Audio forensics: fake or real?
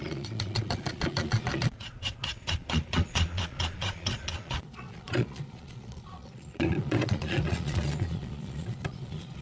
fake